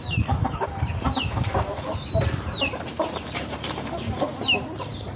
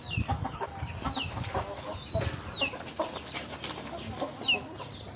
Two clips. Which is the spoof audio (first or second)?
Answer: first